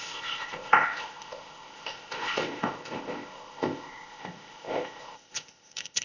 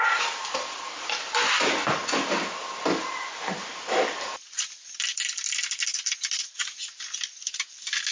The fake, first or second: first